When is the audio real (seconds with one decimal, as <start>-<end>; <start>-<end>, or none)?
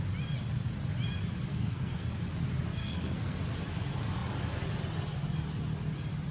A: 0.0-1.5; 2.2-2.7; 3.4-6.3